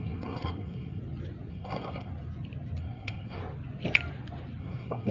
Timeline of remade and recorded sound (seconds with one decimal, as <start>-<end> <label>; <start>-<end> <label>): 0.0-1.0 remade; 1.0-1.5 recorded; 1.5-2.1 remade; 2.1-2.8 recorded; 2.8-3.4 remade; 3.4-4.6 recorded; 4.6-5.1 remade